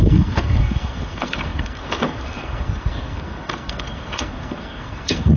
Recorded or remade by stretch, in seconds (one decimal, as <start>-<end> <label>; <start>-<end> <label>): 0.0-5.4 remade

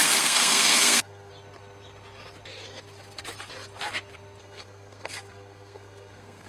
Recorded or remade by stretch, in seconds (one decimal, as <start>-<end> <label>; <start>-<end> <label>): 0.0-1.3 remade; 1.3-4.4 recorded; 4.4-6.5 remade

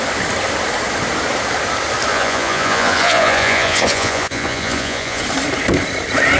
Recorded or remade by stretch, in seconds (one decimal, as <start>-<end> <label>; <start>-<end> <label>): 0.0-2.1 recorded; 2.1-5.2 remade; 5.2-6.4 recorded

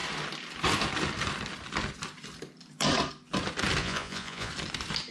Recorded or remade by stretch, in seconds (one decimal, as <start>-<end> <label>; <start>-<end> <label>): 0.0-3.8 recorded; 3.8-4.5 remade; 4.5-5.1 recorded

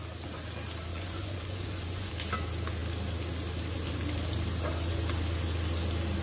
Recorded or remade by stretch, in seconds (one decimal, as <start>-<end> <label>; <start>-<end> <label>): 0.0-0.9 recorded; 0.9-2.1 remade; 2.1-6.2 recorded

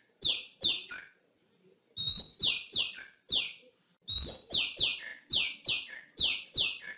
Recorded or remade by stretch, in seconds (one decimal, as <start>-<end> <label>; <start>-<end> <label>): 0.0-7.0 recorded